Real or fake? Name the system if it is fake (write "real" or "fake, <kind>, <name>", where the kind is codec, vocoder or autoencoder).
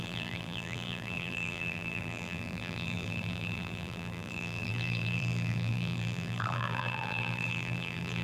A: fake, vocoder, BigVGAN v2